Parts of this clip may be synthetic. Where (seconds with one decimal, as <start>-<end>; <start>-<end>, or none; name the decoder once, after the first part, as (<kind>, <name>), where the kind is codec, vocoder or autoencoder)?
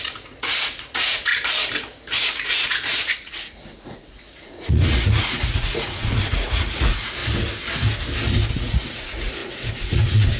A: 0.0-1.3 (vocoder, Vocos); 2.4-7.2; 8.5-10.4